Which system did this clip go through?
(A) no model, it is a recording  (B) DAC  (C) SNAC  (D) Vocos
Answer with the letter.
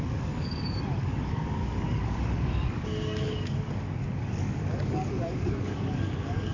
B